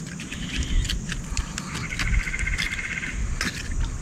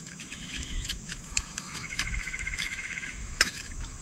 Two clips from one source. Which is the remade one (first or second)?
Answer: second